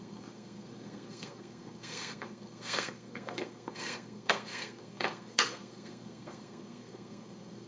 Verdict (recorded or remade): remade